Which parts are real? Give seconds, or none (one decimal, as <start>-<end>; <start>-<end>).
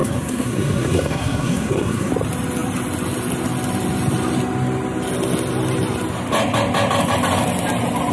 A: 2.1-8.1